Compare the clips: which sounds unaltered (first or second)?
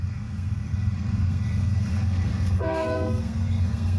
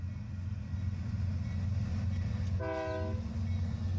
second